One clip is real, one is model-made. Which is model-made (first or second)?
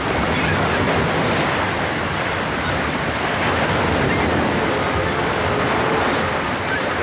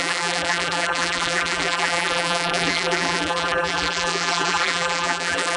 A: second